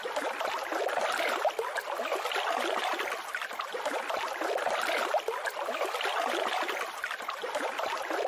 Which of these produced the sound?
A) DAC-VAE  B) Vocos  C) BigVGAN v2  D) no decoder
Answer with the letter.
D